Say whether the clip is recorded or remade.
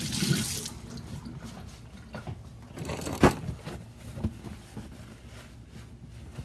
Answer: recorded